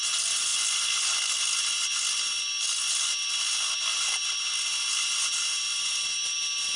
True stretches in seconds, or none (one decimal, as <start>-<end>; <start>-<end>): 0.0-6.8